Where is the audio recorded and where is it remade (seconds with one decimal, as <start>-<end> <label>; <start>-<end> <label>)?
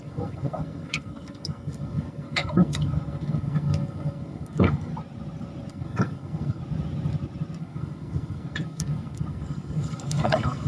0.0-4.9 remade; 4.9-5.7 recorded; 5.7-6.6 remade; 6.6-7.6 recorded; 7.6-10.7 remade